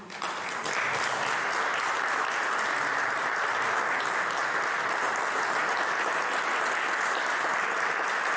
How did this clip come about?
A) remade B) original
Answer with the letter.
B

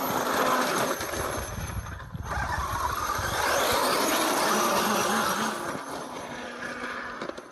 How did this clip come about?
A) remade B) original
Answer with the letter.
B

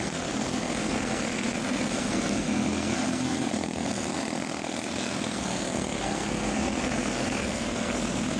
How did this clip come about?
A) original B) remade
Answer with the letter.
B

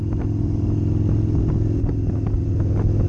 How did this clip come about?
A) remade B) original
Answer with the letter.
B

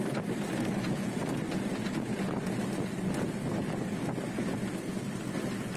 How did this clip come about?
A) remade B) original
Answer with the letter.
B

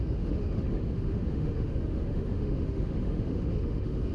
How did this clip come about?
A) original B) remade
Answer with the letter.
B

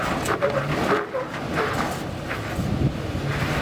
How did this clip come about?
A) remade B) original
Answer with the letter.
B